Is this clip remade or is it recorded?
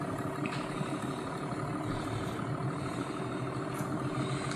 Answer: recorded